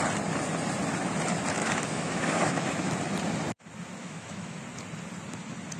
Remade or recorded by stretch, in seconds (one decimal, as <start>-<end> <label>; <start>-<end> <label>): 0.0-1.6 recorded; 1.6-2.9 remade; 2.9-4.0 recorded; 4.0-4.6 remade; 4.6-5.8 recorded